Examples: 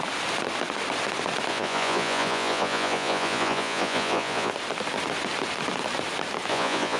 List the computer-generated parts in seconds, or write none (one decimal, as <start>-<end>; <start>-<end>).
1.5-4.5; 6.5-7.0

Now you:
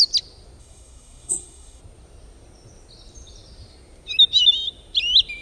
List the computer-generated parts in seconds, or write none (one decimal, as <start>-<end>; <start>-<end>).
0.6-1.8

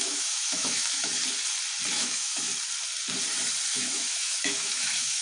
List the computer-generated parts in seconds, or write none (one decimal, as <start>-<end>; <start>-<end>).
0.0-1.1; 1.9-2.5; 3.7-5.2